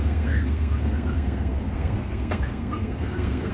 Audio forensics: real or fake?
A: fake